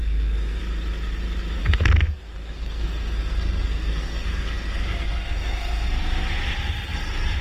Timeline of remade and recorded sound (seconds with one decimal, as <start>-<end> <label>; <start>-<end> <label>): 0.0-0.6 remade; 0.6-1.6 recorded; 1.6-6.0 remade; 6.0-7.4 recorded

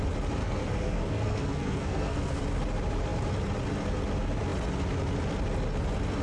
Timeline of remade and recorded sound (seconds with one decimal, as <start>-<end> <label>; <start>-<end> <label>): 0.0-0.4 recorded; 0.4-2.4 remade; 2.4-6.2 recorded

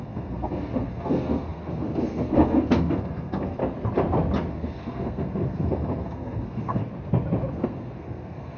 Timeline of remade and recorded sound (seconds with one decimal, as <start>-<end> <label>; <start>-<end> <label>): 0.0-3.6 remade; 3.6-4.5 recorded; 4.5-6.8 remade; 6.8-7.5 recorded; 7.5-8.6 remade

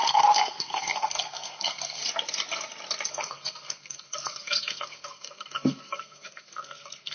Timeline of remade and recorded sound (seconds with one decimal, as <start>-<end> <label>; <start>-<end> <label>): 0.0-2.0 remade; 2.0-3.1 recorded; 3.1-7.1 remade

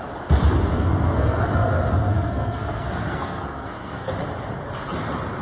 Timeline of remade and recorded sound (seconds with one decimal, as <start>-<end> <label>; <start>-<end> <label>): 0.0-0.7 recorded; 0.7-1.5 remade; 1.5-2.1 recorded; 2.1-4.1 remade; 4.1-5.4 recorded